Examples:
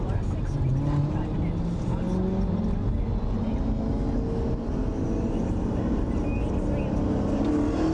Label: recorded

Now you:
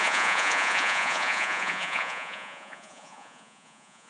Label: remade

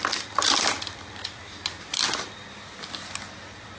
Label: remade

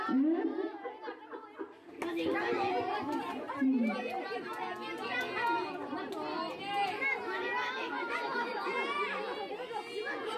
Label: recorded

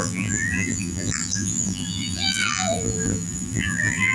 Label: remade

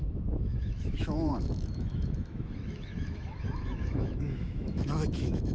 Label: remade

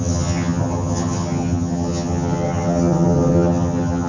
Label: remade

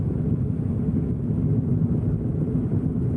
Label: recorded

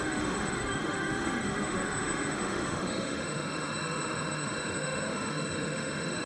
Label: remade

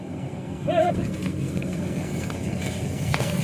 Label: remade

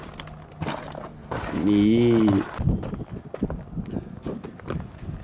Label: recorded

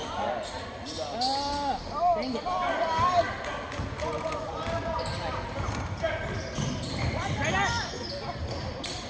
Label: recorded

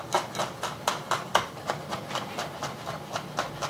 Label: recorded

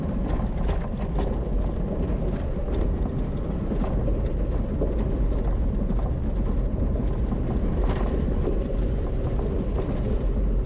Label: recorded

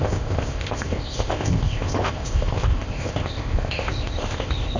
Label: remade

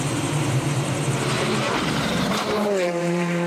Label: remade